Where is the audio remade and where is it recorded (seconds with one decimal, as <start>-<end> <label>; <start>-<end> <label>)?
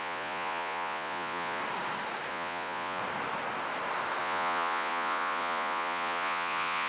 0.0-1.6 remade; 1.6-2.3 recorded; 2.3-3.0 remade; 3.0-4.2 recorded; 4.2-6.9 remade